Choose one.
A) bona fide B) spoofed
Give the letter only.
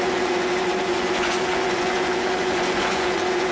B